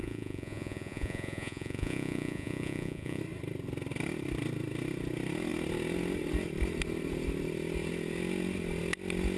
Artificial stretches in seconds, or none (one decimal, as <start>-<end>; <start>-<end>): 0.0-3.2